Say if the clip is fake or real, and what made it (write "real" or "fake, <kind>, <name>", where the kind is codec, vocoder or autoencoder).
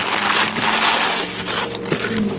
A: real